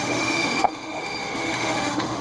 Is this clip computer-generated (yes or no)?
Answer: yes